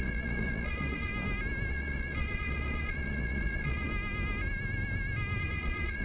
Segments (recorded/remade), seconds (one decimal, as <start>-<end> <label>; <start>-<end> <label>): 0.0-1.1 remade; 1.1-1.7 recorded; 1.7-3.9 remade; 3.9-5.4 recorded; 5.4-6.0 remade